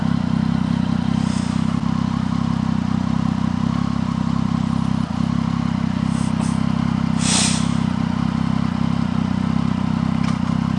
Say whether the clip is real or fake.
real